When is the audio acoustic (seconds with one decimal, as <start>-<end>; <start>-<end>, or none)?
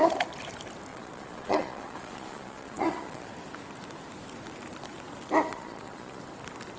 0.0-0.9; 3.3-5.5; 6.2-6.8